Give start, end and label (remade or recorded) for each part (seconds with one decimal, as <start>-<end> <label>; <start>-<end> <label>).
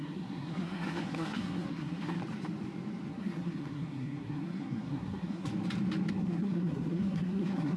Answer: 0.0-2.2 remade; 2.2-3.1 recorded; 3.1-5.5 remade; 5.5-6.1 recorded; 6.1-7.8 remade